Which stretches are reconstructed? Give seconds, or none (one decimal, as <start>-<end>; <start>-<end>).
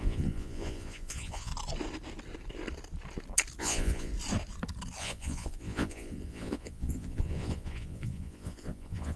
0.0-1.5; 3.6-4.1; 5.0-9.2